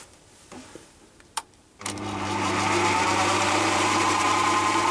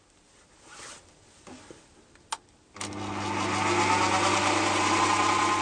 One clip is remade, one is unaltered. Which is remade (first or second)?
first